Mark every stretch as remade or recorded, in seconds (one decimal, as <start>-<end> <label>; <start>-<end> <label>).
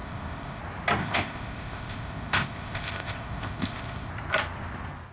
0.0-0.6 remade; 0.6-1.0 recorded; 1.0-4.1 remade; 4.1-5.1 recorded